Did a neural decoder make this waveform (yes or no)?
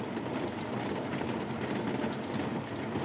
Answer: no